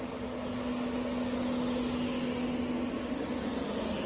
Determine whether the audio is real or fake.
real